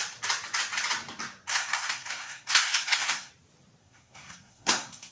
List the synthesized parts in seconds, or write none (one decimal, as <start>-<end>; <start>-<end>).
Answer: 1.5-3.3; 3.8-5.1